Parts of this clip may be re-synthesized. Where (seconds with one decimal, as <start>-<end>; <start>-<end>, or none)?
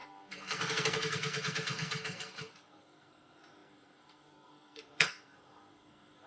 0.0-6.3